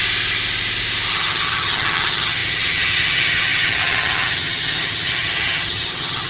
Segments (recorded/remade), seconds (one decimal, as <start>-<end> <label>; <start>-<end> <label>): 0.0-1.1 recorded; 1.1-6.3 remade